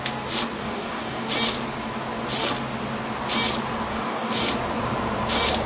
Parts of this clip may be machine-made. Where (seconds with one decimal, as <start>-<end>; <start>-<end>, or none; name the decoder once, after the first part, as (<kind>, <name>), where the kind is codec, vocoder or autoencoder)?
0.6-1.3 (codec, DAC); 3.9-4.4